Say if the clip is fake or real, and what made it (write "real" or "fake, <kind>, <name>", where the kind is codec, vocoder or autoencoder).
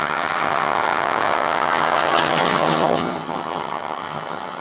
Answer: fake, vocoder, HiFi-GAN